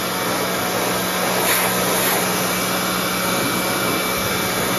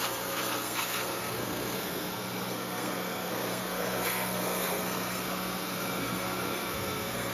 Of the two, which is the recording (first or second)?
first